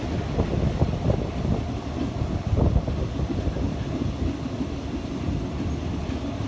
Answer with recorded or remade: recorded